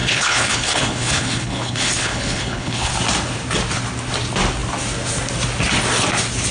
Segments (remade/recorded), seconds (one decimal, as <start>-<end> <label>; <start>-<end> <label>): 0.0-2.9 remade; 2.9-6.5 recorded